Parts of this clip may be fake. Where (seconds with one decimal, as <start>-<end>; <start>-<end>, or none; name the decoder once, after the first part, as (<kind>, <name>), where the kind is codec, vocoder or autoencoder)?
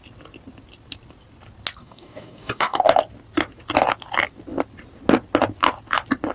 1.8-2.8 (codec, DAC)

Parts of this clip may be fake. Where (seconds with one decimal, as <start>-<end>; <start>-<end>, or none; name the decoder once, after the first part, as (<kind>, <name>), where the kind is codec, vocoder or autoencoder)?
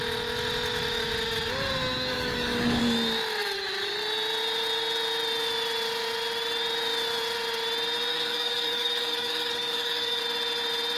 2.1-2.8 (codec, DAC); 8.1-10.2